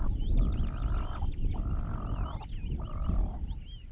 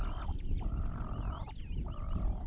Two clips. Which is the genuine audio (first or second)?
first